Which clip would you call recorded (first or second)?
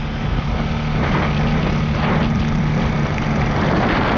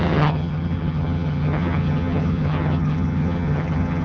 first